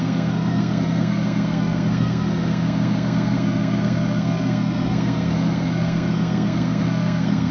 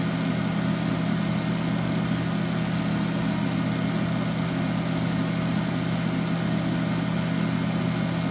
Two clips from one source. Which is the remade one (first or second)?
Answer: first